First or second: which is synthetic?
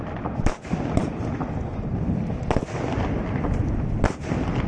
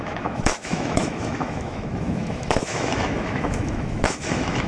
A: second